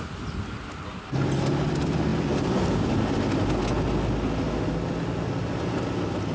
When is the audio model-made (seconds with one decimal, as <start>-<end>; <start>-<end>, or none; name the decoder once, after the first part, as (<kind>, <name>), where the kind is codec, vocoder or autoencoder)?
none